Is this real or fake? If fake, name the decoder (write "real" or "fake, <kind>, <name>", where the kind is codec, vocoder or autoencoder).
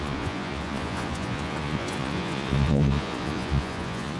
fake, vocoder, Vocos